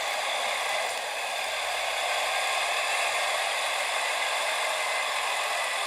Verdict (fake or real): fake